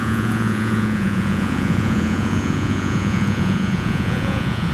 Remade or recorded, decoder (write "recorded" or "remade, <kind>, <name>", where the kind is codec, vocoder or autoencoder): remade, vocoder, Vocos